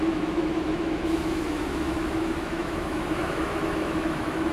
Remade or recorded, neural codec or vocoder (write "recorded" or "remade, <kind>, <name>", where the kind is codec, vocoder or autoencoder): remade, autoencoder, DAC-VAE